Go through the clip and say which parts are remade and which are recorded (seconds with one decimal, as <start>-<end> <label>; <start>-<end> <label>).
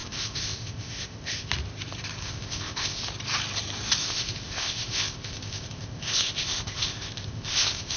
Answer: 0.0-1.5 remade; 1.5-2.2 recorded; 2.2-3.0 remade; 3.0-4.0 recorded; 4.0-8.0 remade